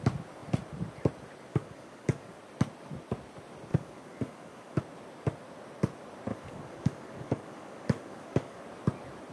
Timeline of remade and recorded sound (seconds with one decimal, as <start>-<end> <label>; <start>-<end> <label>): 0.0-1.5 recorded; 1.5-2.4 remade; 2.4-3.7 recorded; 3.7-4.8 remade; 4.8-6.3 recorded; 6.3-8.6 remade; 8.6-9.3 recorded